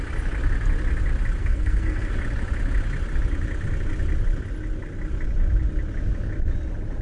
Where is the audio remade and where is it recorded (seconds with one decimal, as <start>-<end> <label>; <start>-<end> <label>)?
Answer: 0.0-1.4 recorded; 1.4-2.1 remade; 2.1-7.0 recorded